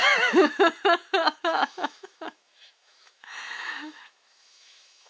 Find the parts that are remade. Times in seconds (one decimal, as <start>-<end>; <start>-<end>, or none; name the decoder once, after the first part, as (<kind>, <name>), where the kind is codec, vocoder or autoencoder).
0.0-5.1 (autoencoder, DAC-VAE)